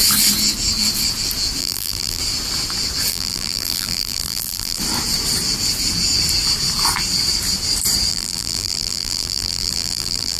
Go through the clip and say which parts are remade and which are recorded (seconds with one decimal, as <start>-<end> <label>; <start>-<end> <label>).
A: 0.0-1.6 recorded; 1.6-2.2 remade; 2.2-3.1 recorded; 3.1-4.8 remade; 4.8-8.1 recorded; 8.1-10.4 remade